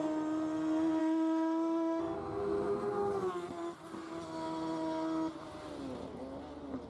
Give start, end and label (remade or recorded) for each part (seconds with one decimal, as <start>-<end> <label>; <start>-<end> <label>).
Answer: 0.0-1.0 recorded; 1.0-2.0 remade; 2.0-6.9 recorded